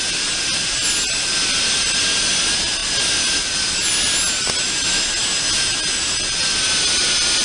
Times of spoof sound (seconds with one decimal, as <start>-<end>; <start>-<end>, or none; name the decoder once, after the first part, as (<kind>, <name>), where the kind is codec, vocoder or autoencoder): none